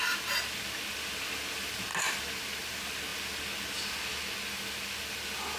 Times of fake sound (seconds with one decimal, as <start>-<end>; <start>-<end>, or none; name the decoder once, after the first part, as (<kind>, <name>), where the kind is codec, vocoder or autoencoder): none